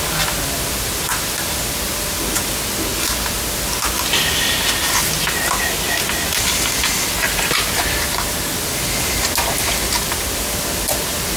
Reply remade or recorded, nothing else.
recorded